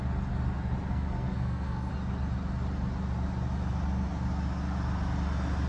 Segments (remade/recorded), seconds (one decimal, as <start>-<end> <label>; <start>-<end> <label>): 0.0-0.9 recorded; 0.9-1.9 remade; 1.9-5.7 recorded